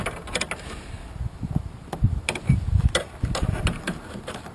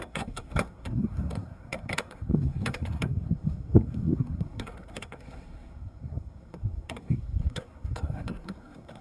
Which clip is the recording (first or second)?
first